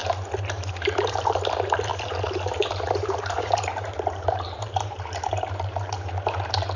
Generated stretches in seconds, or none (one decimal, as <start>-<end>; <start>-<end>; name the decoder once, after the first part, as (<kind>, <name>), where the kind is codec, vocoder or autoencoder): 0.7-6.8 (vocoder, BigVGAN v2)